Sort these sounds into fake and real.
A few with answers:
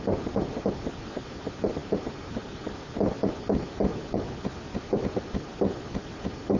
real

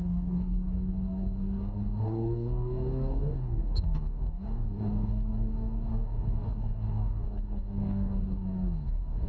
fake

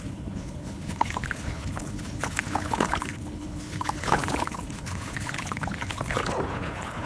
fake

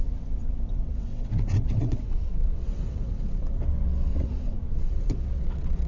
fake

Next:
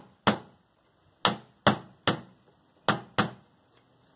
real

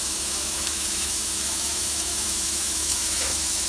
fake